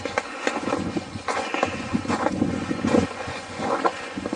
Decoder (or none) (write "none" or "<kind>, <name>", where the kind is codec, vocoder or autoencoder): vocoder, Vocos